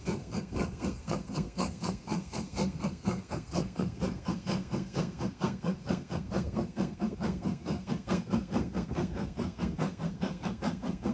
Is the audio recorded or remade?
remade